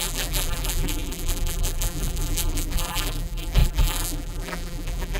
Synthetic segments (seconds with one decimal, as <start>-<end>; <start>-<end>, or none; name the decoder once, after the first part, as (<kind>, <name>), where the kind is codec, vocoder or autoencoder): 0.0-5.2 (vocoder, BigVGAN v2)